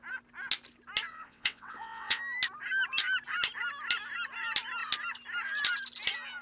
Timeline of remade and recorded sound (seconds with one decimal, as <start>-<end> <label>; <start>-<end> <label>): 0.0-1.1 recorded; 1.1-2.2 remade; 2.2-6.4 recorded